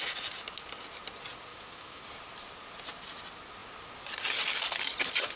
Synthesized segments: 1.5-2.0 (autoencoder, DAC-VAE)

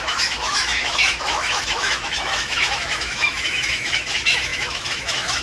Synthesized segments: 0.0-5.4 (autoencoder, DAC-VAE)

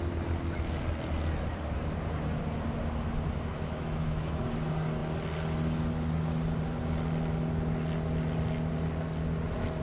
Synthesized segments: 3.5-4.4 (autoencoder, DAC-VAE)

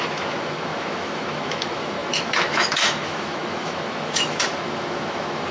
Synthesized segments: 0.0-5.5 (autoencoder, DAC-VAE)

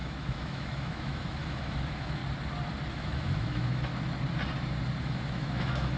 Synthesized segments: 0.0-2.2 (autoencoder, DAC-VAE); 2.9-3.9; 5.0-6.0